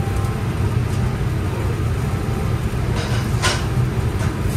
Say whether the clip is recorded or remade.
recorded